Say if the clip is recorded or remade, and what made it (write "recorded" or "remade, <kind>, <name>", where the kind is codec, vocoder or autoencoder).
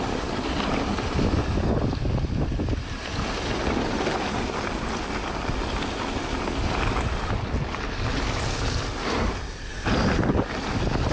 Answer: recorded